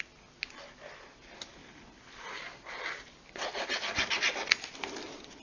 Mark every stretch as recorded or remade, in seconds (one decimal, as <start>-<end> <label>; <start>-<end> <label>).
0.0-5.4 recorded